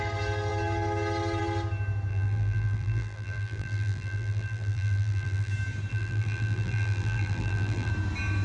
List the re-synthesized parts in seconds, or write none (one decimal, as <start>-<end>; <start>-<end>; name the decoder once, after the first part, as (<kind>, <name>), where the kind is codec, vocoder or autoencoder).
2.1-5.5 (vocoder, BigVGAN v2); 5.9-7.9